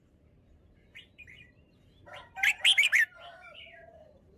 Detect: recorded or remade remade